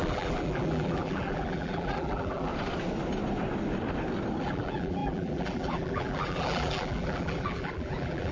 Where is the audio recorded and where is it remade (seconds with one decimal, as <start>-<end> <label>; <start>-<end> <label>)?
0.0-2.5 remade; 2.5-4.4 recorded; 4.4-8.3 remade